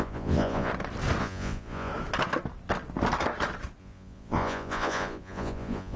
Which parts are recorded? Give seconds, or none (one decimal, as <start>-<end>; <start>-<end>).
0.7-1.2; 1.9-3.8